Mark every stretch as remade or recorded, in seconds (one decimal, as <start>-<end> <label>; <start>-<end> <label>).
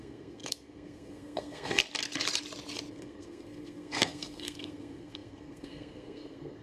0.0-1.8 remade; 1.8-2.9 recorded; 2.9-6.6 remade